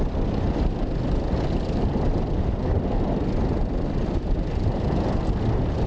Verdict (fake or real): real